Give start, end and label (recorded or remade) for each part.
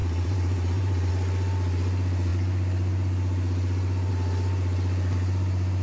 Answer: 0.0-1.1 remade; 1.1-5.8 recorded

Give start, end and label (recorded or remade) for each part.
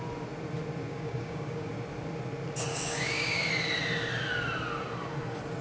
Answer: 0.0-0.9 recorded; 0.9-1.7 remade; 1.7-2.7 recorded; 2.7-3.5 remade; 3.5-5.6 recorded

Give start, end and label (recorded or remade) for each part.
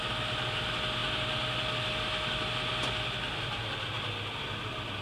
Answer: 0.0-5.0 recorded